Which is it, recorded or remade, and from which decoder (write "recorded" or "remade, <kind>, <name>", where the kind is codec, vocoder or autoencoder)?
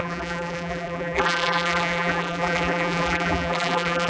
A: remade, vocoder, BigVGAN v2